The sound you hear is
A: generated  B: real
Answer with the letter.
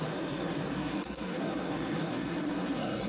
A